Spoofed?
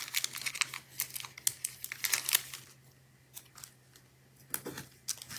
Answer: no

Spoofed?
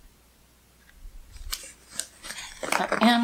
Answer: no